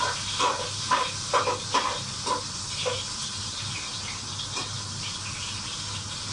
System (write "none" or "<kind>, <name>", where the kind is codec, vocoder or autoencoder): none